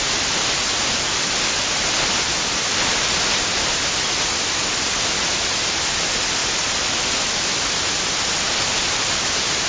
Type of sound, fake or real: real